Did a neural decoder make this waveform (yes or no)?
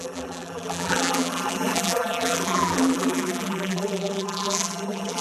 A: yes